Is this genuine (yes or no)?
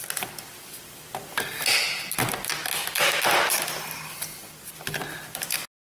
yes